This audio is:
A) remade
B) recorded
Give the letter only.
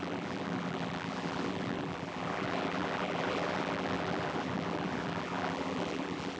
A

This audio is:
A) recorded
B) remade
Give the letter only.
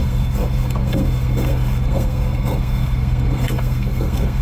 B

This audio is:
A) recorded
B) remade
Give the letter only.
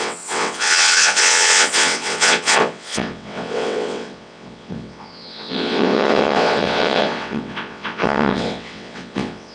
B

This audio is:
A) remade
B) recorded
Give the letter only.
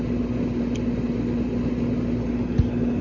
B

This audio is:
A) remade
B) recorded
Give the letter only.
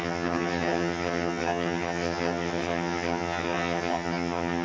A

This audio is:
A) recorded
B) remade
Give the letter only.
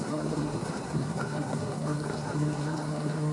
B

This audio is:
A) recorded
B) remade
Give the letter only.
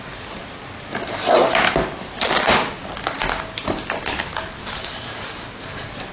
A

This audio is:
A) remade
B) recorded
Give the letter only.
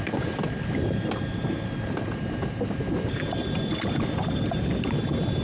B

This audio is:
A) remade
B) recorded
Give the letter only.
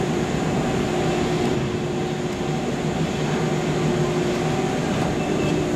B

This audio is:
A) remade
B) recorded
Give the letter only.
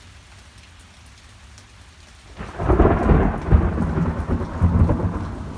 B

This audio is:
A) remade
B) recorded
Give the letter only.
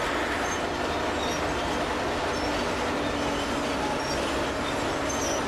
B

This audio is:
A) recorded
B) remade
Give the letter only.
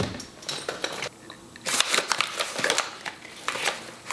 B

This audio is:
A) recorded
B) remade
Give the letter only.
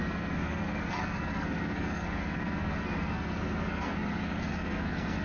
B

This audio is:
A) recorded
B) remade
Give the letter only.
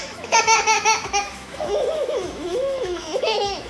B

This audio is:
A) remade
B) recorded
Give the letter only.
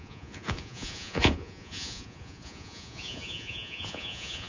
A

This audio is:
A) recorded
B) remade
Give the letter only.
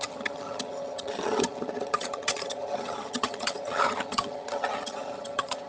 B